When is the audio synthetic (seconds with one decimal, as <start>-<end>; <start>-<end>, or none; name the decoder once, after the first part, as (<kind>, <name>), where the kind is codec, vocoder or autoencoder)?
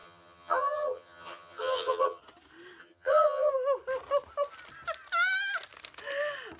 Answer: 0.0-2.2 (vocoder, HiFi-GAN); 2.8-3.5